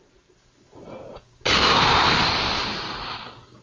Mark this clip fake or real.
real